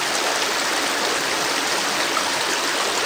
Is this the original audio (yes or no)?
yes